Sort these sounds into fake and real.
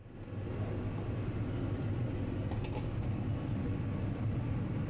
real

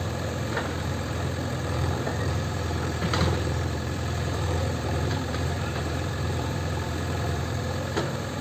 fake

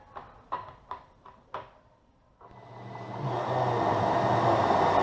real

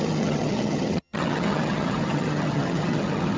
fake